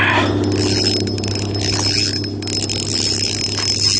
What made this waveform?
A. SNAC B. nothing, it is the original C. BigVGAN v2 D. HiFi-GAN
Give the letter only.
B